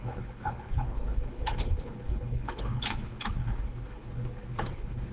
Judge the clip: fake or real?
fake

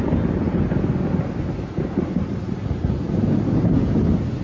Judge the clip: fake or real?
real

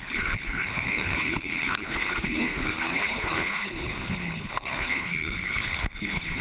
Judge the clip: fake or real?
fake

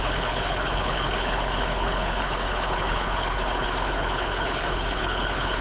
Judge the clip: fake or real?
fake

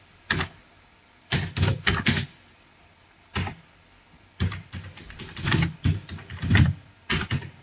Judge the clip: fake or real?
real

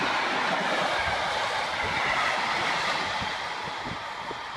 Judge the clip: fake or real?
real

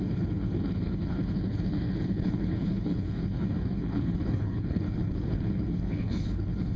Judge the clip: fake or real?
fake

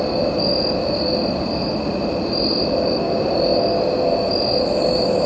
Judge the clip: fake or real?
real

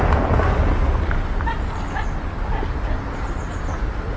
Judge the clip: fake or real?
real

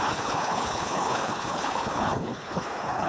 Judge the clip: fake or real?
fake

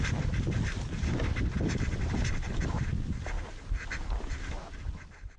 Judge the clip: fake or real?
real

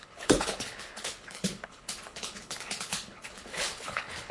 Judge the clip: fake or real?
fake